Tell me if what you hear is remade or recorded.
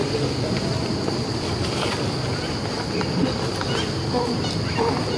recorded